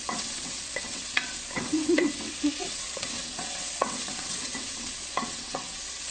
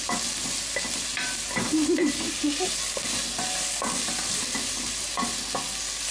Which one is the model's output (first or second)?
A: first